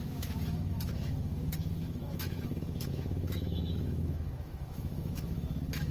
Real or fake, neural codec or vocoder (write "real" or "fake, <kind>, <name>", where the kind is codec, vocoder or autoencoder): fake, autoencoder, DAC-VAE